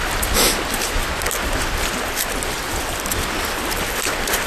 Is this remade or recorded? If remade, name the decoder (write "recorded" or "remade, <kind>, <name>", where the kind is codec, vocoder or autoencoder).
recorded